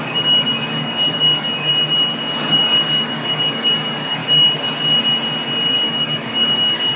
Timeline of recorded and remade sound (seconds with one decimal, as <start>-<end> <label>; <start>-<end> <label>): 0.0-1.7 remade; 1.7-2.5 recorded; 2.5-4.2 remade; 4.2-5.7 recorded; 5.7-7.0 remade